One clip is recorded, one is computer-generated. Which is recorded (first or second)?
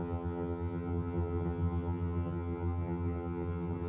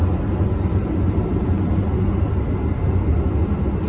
second